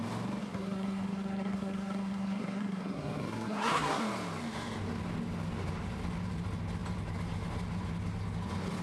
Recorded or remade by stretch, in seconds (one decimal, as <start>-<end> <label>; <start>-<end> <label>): 0.0-0.4 recorded; 0.4-4.0 remade; 4.0-8.8 recorded